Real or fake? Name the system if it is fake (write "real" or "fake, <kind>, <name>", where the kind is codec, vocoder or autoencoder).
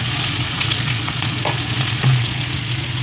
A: fake, vocoder, Vocos